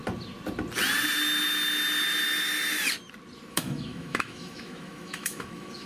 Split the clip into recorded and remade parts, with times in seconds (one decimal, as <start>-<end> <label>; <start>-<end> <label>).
0.0-3.5 recorded; 3.5-5.9 remade